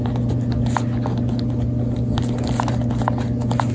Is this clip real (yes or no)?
yes